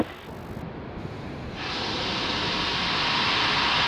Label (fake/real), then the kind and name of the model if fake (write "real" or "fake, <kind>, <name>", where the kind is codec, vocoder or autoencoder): real